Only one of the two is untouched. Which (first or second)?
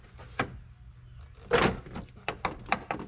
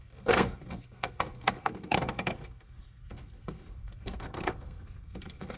first